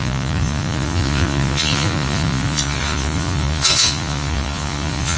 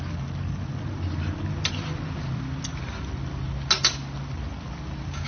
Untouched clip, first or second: second